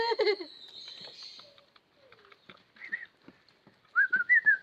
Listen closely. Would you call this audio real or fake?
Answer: real